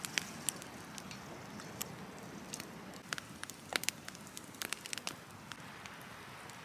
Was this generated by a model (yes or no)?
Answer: no